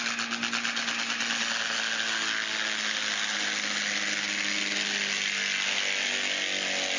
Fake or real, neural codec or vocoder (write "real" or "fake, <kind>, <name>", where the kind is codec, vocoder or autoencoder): real